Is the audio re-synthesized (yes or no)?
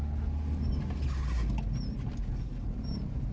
no